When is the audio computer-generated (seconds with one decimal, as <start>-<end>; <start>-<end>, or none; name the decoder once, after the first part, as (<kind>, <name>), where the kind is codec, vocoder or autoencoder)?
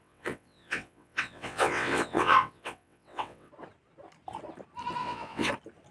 0.0-3.5 (vocoder, WaveNeXt); 5.0-5.5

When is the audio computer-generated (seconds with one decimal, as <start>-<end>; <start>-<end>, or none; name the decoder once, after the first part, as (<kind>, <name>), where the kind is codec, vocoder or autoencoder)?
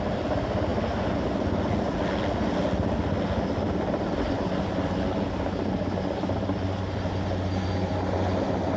none